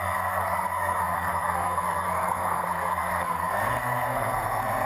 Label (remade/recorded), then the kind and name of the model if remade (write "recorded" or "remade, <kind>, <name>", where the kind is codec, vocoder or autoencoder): remade, codec, SNAC